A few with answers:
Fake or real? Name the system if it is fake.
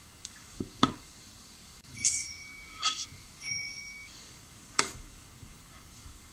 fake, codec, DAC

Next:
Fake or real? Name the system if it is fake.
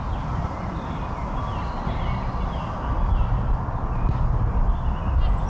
real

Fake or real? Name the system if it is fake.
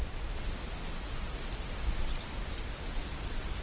real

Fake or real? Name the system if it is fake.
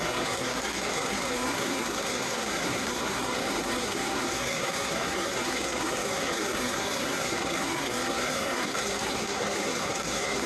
fake, codec, SNAC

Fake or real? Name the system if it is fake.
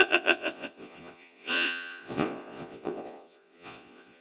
fake, vocoder, Vocos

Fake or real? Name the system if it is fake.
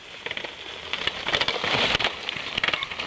real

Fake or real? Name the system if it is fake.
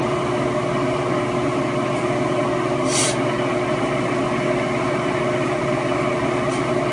real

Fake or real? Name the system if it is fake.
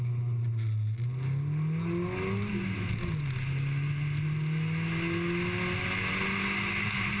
real